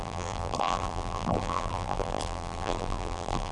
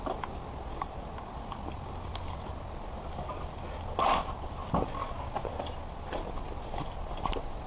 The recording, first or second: second